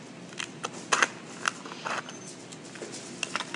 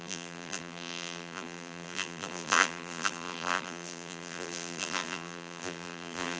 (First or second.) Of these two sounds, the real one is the first